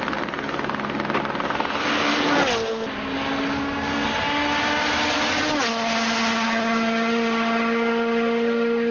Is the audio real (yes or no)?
yes